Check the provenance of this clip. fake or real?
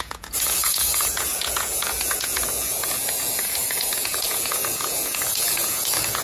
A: fake